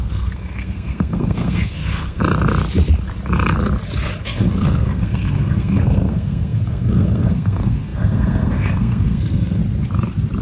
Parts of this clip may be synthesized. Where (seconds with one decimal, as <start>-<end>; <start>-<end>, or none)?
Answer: 0.0-2.2; 4.2-9.6